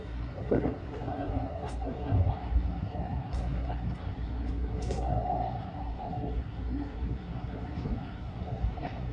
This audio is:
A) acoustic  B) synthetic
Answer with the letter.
B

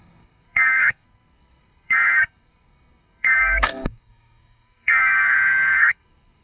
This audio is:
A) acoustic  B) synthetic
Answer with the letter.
B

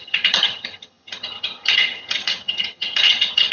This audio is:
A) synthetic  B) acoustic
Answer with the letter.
A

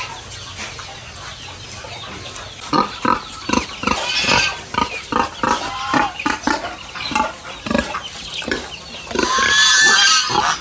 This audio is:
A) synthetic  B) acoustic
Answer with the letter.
B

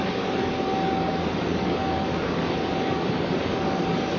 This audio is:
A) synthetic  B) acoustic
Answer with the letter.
A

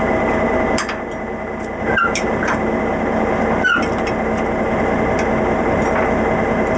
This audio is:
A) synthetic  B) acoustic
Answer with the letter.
B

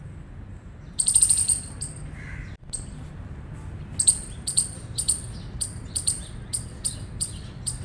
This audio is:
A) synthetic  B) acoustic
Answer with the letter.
B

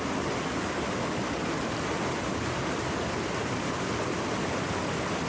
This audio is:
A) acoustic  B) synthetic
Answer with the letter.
A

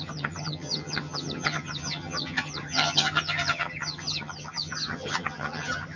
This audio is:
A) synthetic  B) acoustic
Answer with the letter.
A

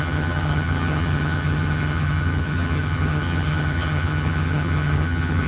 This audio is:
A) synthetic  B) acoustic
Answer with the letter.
A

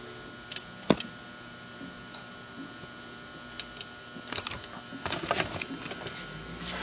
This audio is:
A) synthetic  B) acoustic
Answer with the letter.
B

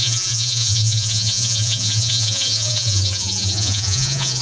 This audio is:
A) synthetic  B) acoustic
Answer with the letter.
A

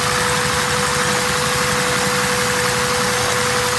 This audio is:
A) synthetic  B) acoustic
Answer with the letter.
B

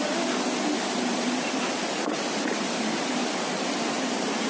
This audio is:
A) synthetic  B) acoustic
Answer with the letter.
B